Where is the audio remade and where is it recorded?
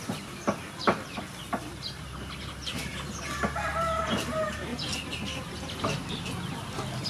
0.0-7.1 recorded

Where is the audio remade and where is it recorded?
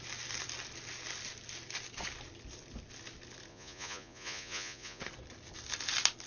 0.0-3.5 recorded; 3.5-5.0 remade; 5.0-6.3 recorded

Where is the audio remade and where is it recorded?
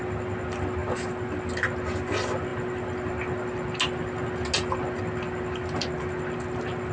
0.0-6.9 recorded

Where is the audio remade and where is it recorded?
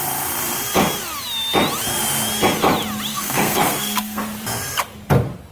0.0-3.1 recorded; 3.1-4.2 remade; 4.2-5.5 recorded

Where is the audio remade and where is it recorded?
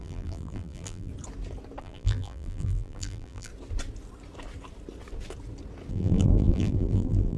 0.0-1.1 remade; 1.1-1.8 recorded; 1.8-3.5 remade; 3.5-5.9 recorded; 5.9-7.4 remade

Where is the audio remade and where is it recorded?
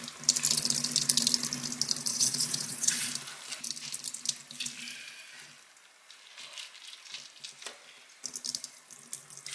0.0-2.1 recorded; 2.1-3.1 remade; 3.1-9.5 recorded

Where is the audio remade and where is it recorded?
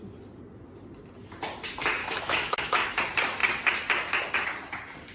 0.0-2.0 recorded; 2.0-3.0 remade; 3.0-5.1 recorded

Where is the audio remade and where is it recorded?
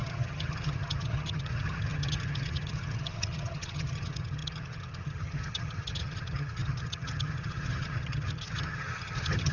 0.0-9.5 remade